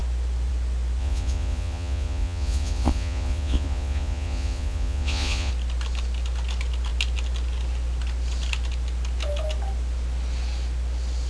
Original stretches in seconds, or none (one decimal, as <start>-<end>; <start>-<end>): 0.0-1.0; 5.5-11.3